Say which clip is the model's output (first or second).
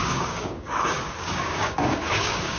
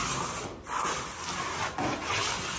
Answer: first